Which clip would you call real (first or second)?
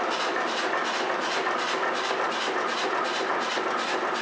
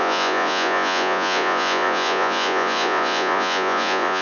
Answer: first